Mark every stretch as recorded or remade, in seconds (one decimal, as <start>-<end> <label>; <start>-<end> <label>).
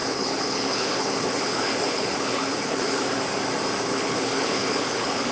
0.0-3.2 remade; 3.2-3.9 recorded; 3.9-5.3 remade